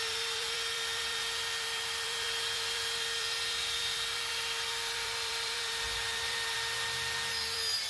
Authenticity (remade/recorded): remade